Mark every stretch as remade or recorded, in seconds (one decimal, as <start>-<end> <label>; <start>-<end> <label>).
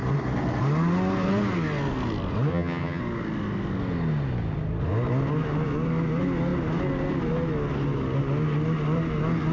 0.0-2.5 recorded; 2.5-3.0 remade; 3.0-9.5 recorded